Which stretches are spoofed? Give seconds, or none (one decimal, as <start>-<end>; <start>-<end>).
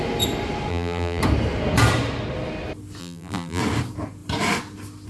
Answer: 0.7-1.2; 3.0-3.6